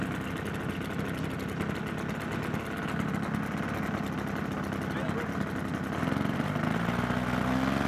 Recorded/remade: recorded